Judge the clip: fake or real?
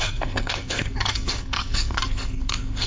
fake